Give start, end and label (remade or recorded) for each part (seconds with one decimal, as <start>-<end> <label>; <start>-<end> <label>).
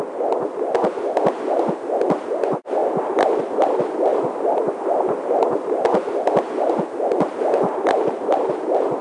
0.0-2.8 recorded; 2.8-3.4 remade; 3.4-4.1 recorded; 4.1-8.5 remade; 8.5-9.0 recorded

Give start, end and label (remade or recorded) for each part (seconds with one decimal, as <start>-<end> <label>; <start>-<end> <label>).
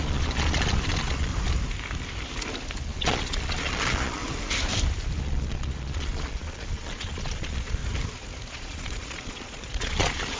0.0-1.3 remade; 1.3-2.8 recorded; 2.8-4.2 remade; 4.2-5.2 recorded; 5.2-7.8 remade; 7.8-8.5 recorded; 8.5-10.4 remade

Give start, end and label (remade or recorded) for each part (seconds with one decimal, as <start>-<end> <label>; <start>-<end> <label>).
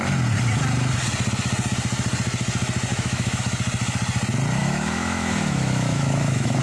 0.0-2.9 recorded; 2.9-3.4 remade; 3.4-4.6 recorded; 4.6-6.6 remade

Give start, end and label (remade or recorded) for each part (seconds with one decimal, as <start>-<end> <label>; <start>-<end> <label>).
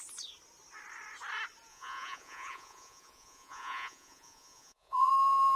0.0-1.7 recorded; 1.7-5.1 remade; 5.1-5.6 recorded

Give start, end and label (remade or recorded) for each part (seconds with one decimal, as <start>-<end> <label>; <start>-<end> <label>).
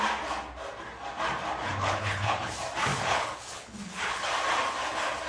0.0-1.6 recorded; 1.6-2.5 remade; 2.5-2.9 recorded; 2.9-4.2 remade; 4.2-5.3 recorded